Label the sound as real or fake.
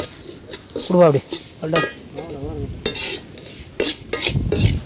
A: real